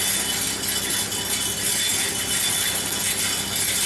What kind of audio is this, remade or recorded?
recorded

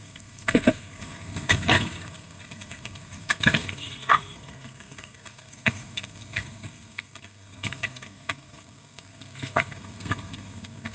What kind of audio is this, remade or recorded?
remade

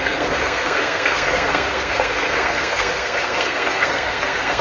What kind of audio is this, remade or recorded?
remade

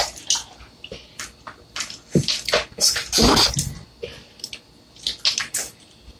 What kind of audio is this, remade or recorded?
recorded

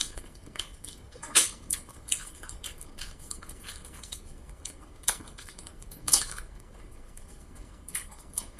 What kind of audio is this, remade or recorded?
remade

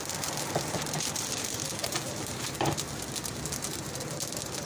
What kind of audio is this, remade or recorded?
recorded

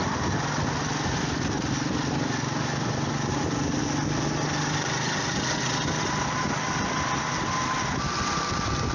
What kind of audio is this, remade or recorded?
recorded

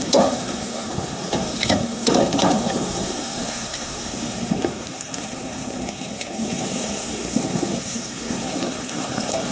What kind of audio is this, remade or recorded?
remade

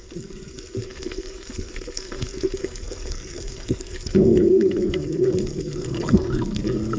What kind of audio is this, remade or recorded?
remade